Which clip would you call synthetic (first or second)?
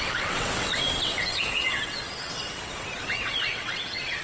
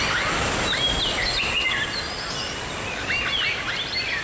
first